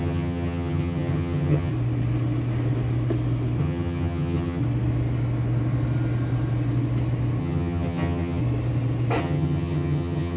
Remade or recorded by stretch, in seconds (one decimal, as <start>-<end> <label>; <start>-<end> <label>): 0.0-1.7 remade; 1.7-3.6 recorded; 3.6-4.6 remade; 4.6-7.4 recorded; 7.4-8.4 remade; 8.4-9.2 recorded; 9.2-10.4 remade